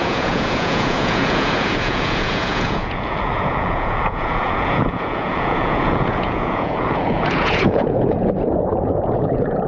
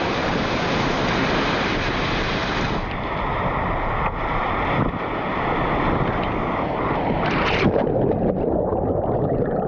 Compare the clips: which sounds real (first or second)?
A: second